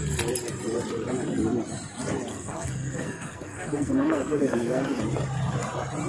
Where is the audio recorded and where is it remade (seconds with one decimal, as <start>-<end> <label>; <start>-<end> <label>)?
0.0-2.3 recorded; 2.3-5.0 remade; 5.0-6.1 recorded